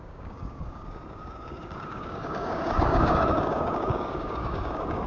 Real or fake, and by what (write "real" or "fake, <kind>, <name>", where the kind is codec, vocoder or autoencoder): fake, codec, DAC